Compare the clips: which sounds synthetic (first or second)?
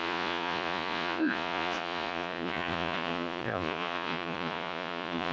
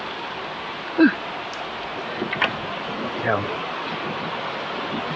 first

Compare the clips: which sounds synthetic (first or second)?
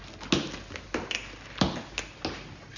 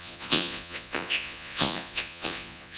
second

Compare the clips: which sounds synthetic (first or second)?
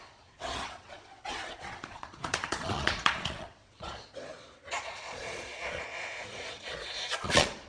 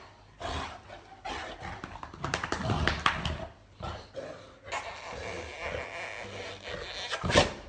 first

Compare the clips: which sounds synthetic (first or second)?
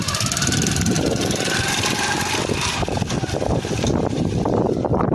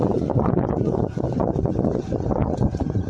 second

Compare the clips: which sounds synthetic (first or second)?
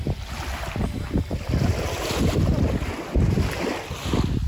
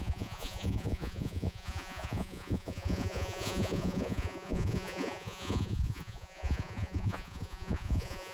second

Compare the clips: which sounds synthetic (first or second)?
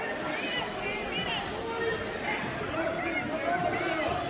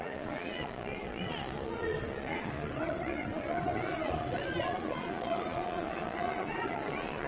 second